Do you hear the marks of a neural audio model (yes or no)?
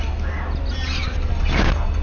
no